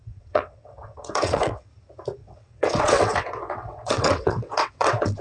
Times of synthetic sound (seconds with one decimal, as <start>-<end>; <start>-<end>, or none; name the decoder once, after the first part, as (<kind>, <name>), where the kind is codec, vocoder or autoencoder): 0.0-1.7 (vocoder, WaveNeXt); 2.2-5.2